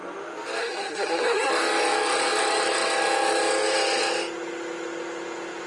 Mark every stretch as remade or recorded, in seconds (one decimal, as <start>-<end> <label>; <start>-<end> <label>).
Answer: 0.0-0.6 recorded; 0.6-1.5 remade; 1.5-5.7 recorded